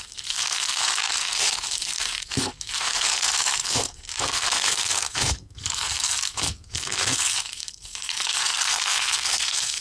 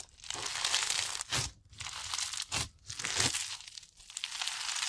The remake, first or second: first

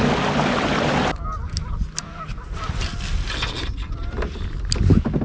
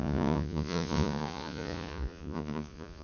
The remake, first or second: second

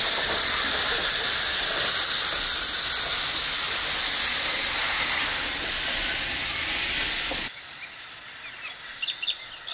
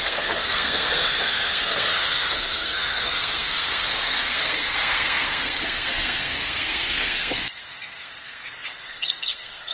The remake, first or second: second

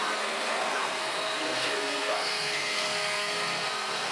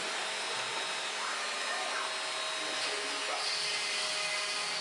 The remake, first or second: first